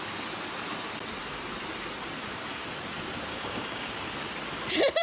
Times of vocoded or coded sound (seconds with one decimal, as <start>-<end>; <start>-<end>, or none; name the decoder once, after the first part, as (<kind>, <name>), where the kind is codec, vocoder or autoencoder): 3.3-3.9 (codec, DAC)